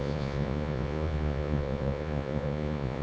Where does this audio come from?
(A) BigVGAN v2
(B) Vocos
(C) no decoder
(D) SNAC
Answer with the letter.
B